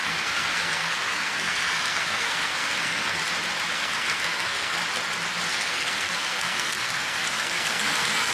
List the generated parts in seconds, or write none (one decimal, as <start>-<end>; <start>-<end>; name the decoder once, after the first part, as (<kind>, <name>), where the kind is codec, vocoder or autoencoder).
0.0-3.2 (codec, SNAC); 3.7-4.8; 5.5-8.3

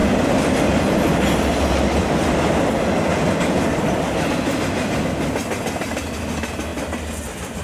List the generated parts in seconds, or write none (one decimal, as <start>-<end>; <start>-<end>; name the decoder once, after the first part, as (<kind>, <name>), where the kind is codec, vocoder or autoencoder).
none

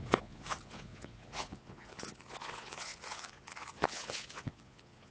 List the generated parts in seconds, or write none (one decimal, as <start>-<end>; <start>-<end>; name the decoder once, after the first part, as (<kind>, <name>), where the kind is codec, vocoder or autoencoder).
0.0-5.1 (vocoder, Vocos)

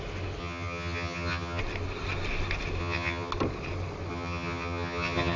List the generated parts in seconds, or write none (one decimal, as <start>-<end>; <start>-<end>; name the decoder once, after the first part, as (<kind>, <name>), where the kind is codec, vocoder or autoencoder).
0.4-1.6 (vocoder, HiFi-GAN); 2.8-3.3; 4.1-5.4

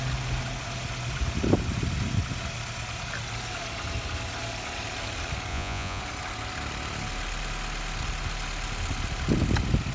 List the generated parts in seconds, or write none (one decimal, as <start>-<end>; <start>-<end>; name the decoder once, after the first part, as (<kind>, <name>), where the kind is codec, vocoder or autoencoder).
5.5-6.0 (vocoder, Vocos)